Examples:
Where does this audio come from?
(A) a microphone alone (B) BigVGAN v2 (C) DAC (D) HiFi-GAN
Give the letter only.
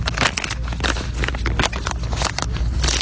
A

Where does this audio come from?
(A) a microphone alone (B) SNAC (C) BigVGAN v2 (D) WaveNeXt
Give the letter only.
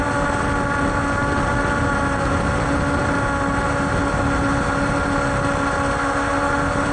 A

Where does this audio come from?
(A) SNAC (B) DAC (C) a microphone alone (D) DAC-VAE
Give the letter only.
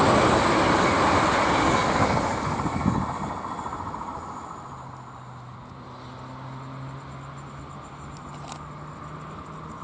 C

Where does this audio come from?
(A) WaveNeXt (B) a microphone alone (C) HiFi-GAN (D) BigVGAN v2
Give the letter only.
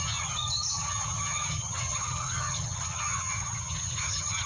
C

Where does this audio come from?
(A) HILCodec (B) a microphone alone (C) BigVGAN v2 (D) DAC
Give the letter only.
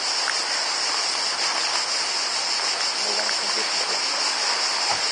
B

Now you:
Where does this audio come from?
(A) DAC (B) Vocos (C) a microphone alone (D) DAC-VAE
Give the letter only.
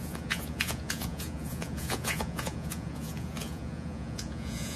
B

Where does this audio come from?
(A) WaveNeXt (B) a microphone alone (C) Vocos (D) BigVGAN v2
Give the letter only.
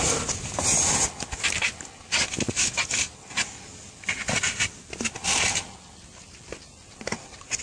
B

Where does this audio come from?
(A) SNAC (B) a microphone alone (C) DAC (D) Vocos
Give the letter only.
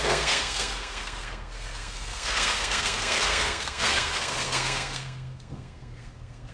A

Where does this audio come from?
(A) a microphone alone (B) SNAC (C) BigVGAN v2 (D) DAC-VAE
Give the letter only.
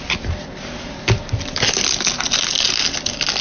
A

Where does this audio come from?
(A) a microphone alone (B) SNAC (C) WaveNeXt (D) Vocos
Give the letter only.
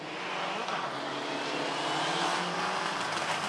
A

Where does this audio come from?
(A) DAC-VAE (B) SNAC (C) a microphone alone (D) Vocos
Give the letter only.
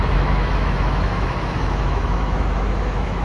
A